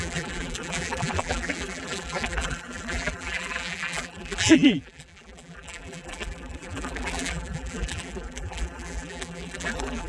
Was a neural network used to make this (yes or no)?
yes